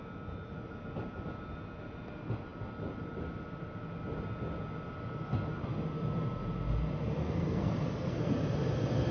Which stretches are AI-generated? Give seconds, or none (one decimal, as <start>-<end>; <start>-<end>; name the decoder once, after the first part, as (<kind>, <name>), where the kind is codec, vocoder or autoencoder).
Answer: 7.2-8.3 (codec, SNAC)